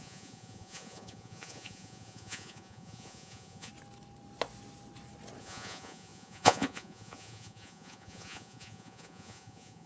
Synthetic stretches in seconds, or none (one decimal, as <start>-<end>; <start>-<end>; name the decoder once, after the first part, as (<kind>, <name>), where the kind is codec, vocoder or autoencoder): 0.0-3.7 (vocoder, Vocos); 5.4-9.9